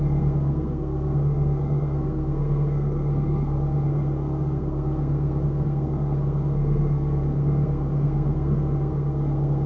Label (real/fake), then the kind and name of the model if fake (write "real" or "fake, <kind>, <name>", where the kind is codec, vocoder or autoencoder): fake, codec, SNAC